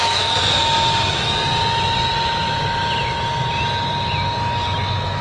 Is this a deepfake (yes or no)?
no